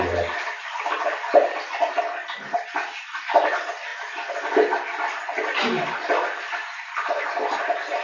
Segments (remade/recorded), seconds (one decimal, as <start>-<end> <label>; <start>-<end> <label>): 0.0-8.0 recorded